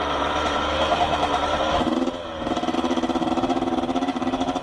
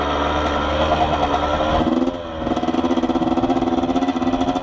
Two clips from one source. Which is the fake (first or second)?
first